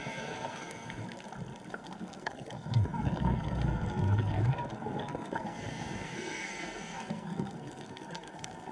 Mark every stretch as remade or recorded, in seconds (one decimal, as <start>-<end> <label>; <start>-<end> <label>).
0.0-1.0 remade; 1.0-1.7 recorded; 1.7-8.7 remade